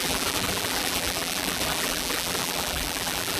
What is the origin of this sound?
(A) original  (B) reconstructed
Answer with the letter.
B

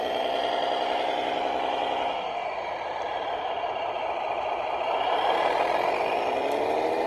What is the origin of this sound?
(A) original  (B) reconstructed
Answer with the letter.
A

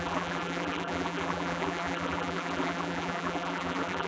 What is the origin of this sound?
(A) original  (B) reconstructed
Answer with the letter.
B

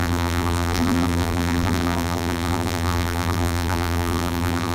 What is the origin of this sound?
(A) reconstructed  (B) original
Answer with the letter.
A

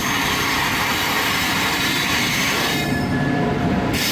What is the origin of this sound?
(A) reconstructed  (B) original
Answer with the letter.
A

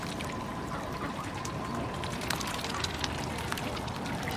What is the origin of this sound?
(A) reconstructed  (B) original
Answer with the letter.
B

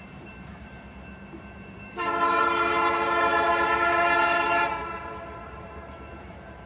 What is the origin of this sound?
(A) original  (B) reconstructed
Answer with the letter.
B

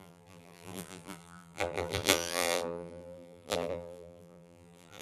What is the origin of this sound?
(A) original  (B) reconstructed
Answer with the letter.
B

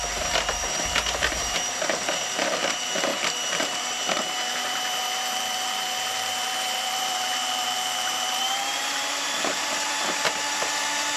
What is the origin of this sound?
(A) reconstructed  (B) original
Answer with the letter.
A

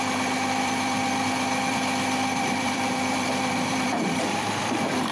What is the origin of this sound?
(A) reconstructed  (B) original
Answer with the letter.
A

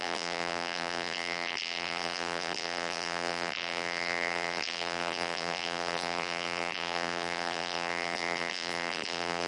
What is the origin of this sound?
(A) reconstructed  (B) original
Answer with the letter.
A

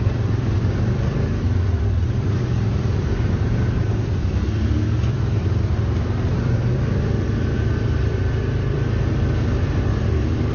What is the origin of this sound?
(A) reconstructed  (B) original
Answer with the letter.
A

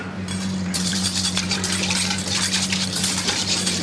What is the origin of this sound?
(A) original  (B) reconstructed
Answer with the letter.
B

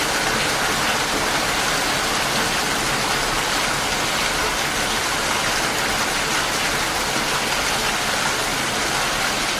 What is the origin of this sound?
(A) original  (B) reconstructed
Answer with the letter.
A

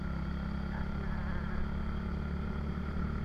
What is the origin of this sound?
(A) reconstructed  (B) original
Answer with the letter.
B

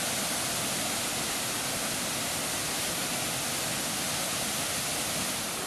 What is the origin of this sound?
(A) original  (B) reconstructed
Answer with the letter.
A